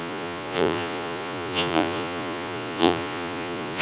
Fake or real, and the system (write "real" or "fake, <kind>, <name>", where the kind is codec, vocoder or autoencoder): fake, vocoder, Vocos